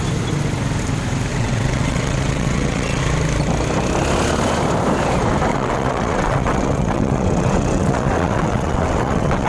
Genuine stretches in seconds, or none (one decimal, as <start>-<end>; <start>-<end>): 0.0-1.3; 3.0-5.5

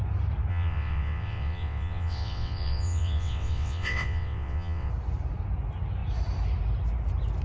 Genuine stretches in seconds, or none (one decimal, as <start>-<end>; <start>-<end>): 0.0-0.5; 4.9-7.4

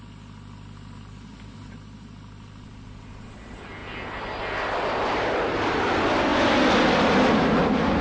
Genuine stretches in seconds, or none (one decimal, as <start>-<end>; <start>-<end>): 0.0-8.0

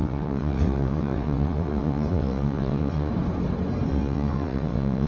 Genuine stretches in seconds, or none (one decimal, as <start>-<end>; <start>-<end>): 3.1-3.9

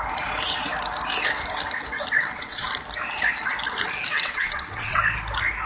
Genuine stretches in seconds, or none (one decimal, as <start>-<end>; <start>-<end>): 0.0-2.2; 2.7-4.1; 5.0-5.7

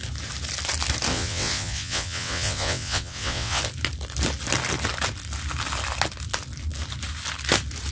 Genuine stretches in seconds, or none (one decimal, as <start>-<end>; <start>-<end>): 0.0-1.1; 3.6-7.9

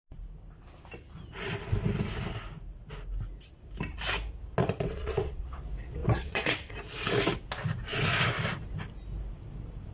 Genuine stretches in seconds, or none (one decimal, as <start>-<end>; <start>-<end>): 0.0-4.6; 5.6-6.0; 6.7-9.9

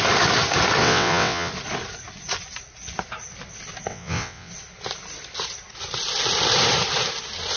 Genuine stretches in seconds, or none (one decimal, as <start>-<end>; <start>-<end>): 0.0-0.8; 1.5-3.9; 4.5-7.6